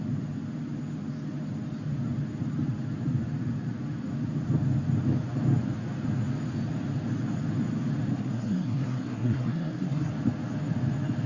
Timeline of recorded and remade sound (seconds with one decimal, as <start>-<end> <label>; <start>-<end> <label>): 0.0-8.1 recorded; 8.1-10.1 remade; 10.1-11.3 recorded